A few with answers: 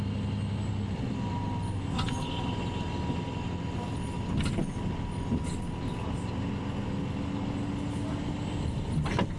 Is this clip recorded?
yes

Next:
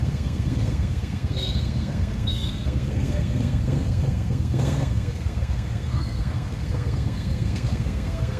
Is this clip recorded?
no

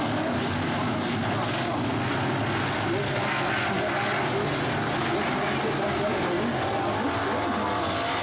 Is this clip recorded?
yes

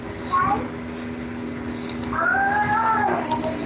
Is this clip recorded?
yes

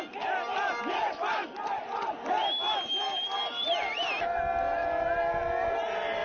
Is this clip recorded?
yes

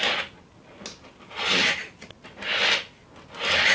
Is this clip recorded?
yes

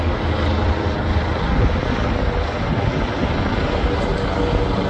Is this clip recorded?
yes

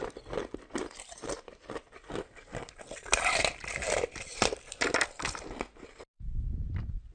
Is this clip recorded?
yes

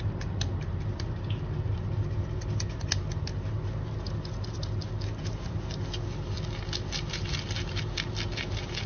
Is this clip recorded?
yes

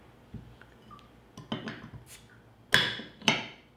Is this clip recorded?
yes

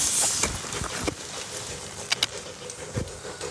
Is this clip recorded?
yes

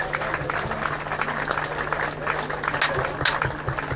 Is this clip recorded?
yes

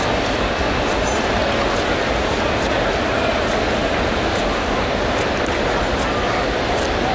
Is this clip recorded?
yes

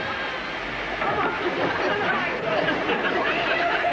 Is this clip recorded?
yes